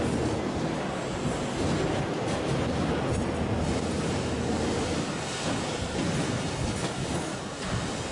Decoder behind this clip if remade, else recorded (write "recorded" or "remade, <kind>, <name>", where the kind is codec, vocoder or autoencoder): recorded